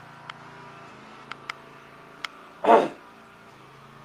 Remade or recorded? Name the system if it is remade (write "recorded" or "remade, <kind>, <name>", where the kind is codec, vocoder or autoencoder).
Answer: recorded